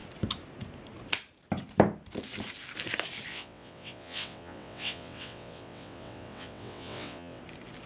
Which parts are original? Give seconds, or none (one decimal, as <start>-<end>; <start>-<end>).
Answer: 0.0-3.3; 7.4-7.9